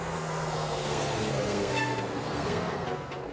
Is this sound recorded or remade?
remade